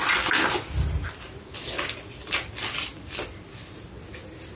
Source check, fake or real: real